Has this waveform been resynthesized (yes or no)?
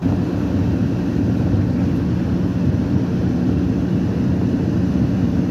no